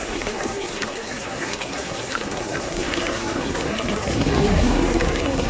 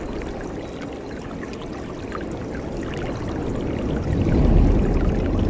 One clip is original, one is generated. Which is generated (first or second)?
first